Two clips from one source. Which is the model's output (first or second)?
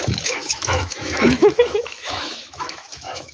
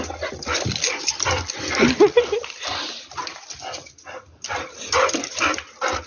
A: first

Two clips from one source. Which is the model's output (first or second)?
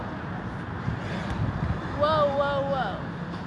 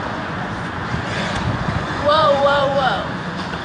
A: second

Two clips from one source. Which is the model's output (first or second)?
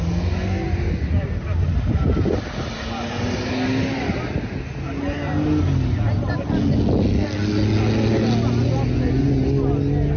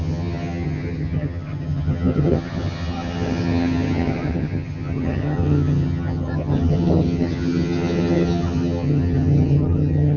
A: second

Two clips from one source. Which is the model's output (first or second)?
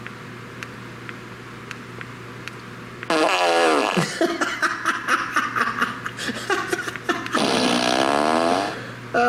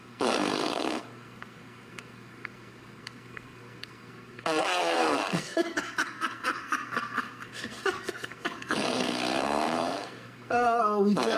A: second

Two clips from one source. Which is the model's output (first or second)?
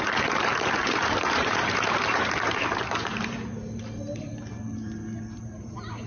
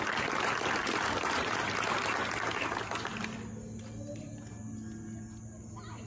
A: first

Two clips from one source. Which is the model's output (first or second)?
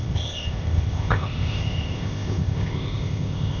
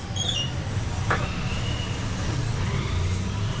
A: first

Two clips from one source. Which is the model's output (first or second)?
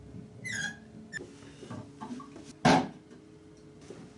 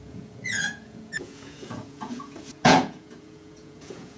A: second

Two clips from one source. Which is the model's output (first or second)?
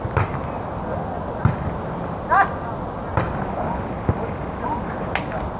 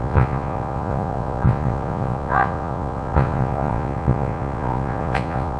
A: second